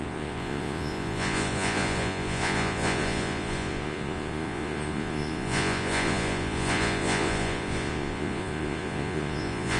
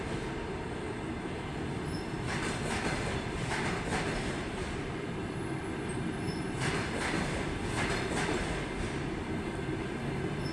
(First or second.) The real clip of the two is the second